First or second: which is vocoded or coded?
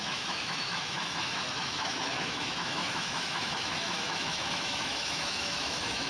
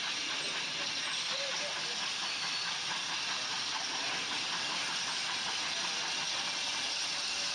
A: first